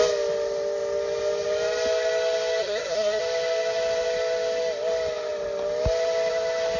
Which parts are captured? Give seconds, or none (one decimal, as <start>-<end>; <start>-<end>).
0.0-2.6; 3.2-6.8